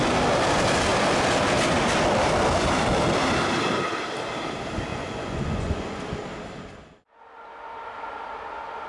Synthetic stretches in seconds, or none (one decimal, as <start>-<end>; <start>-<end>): 4.9-6.0